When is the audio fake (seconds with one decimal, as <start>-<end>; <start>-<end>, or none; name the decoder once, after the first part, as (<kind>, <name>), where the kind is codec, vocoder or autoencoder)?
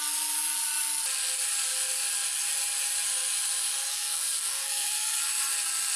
3.9-5.2 (codec, SNAC)